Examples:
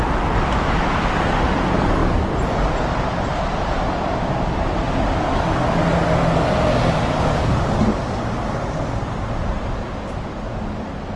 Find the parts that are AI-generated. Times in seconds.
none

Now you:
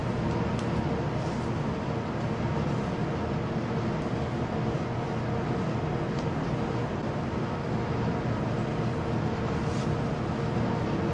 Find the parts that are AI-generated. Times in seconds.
none

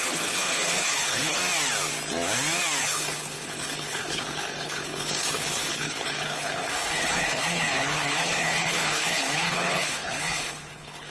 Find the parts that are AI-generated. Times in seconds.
0.0-1.4 (codec, HILCodec); 2.8-11.1

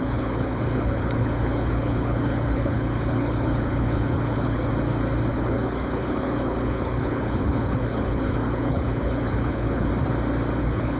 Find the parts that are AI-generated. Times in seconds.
0.0-4.7 (codec, HILCodec); 5.3-9.9; 10.6-11.0

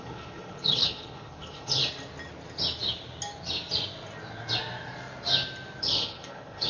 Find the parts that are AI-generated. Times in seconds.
0.0-1.8 (codec, HILCodec); 5.8-6.7

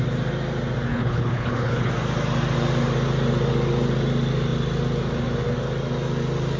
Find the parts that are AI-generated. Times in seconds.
0.9-1.9 (codec, HILCodec)

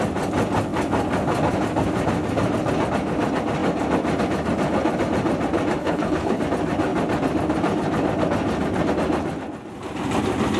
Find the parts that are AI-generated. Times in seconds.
5.8-6.4 (codec, HILCodec)